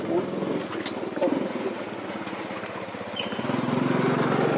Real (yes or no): yes